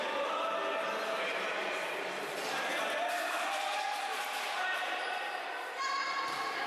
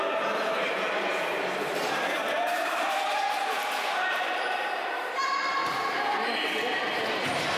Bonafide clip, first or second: first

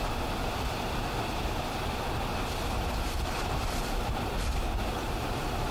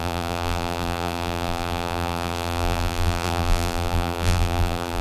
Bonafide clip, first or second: first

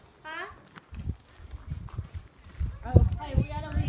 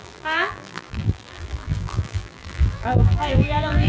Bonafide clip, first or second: first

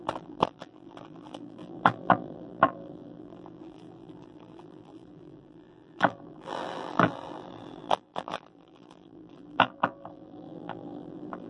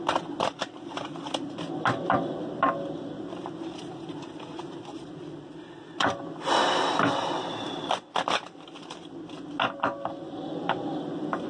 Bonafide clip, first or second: second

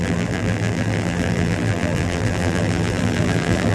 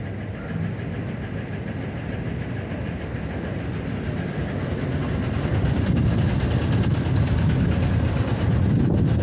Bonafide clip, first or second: second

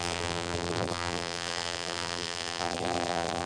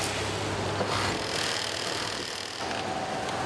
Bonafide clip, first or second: second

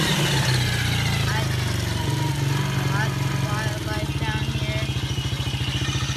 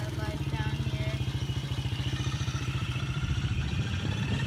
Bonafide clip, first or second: first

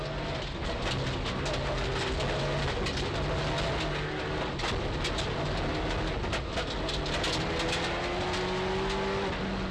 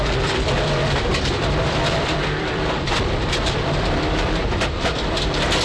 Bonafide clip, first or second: first